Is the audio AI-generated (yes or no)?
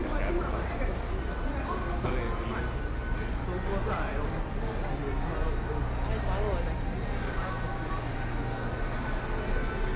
no